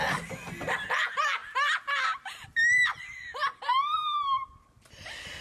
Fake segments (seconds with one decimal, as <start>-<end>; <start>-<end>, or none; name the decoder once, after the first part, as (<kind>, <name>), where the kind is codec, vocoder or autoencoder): 1.4-4.5 (vocoder, BigVGAN v2)